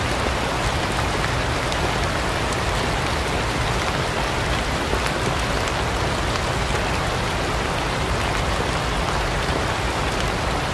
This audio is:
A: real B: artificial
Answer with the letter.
A